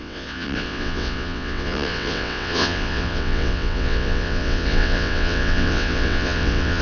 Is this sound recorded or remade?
remade